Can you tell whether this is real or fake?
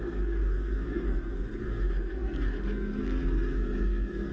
fake